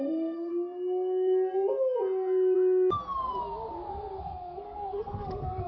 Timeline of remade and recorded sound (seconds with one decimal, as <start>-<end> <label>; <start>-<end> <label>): 0.0-0.5 remade; 0.5-3.9 recorded; 3.9-5.7 remade